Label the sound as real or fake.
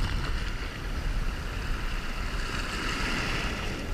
real